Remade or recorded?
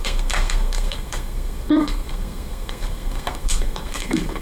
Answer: remade